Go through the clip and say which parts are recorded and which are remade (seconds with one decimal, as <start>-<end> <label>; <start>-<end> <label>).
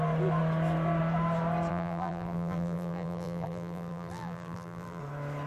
0.0-1.7 recorded; 1.7-5.0 remade; 5.0-5.5 recorded